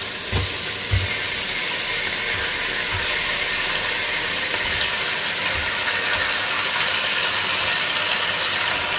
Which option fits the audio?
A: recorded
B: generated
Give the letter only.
A